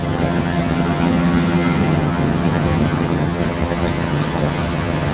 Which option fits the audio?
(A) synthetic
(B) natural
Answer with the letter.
A